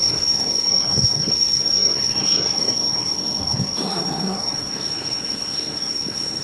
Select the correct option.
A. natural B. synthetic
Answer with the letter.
B